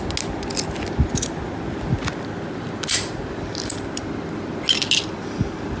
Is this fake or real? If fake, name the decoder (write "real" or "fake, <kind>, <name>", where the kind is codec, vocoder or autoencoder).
real